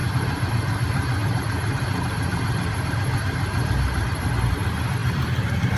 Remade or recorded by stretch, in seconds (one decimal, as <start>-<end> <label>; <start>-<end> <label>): 0.0-5.8 remade